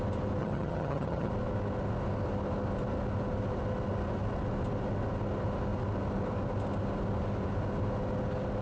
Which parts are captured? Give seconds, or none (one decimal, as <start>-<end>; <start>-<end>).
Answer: 0.0-0.4; 1.3-8.6